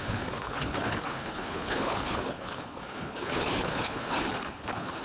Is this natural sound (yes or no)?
no